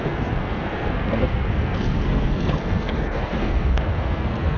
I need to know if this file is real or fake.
fake